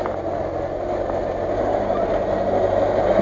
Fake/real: real